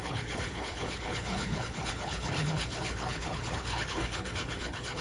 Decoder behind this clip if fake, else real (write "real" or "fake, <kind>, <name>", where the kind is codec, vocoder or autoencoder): fake, codec, HILCodec